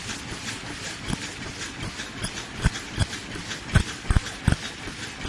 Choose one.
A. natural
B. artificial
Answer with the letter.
A